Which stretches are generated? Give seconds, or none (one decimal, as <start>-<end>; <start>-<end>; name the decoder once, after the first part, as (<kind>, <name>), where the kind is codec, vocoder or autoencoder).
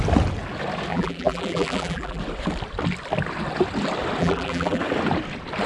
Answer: 0.9-2.2 (vocoder, BigVGAN v2); 4.2-4.8